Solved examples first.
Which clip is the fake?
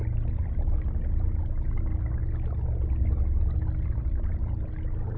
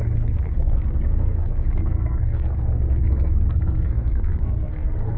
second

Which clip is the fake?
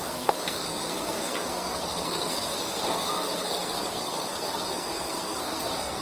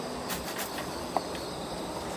first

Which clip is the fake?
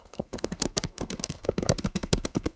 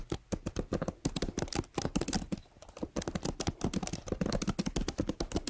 first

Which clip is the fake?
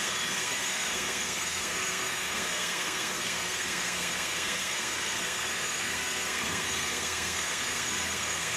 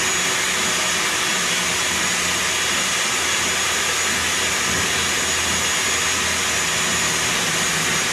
first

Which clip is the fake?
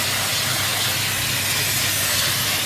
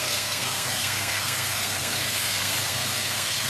second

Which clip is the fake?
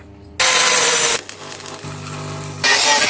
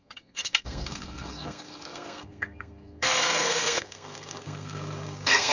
second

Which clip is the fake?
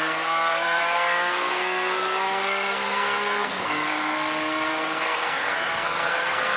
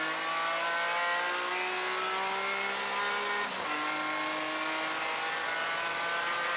first